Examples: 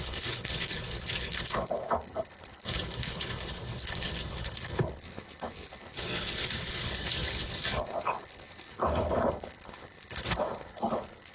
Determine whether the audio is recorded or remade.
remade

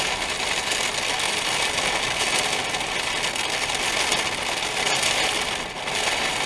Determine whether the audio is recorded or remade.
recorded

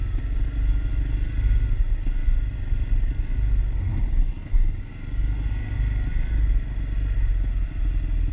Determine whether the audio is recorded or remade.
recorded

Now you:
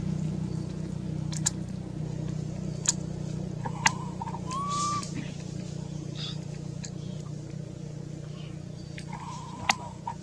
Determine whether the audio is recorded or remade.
recorded